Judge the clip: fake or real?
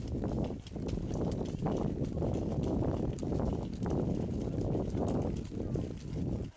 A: real